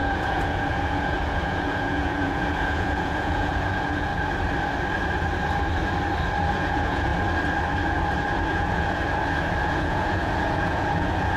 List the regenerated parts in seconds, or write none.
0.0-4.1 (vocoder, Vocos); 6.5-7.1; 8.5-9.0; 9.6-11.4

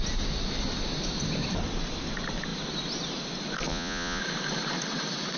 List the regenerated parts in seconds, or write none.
3.7-4.2 (vocoder, Vocos)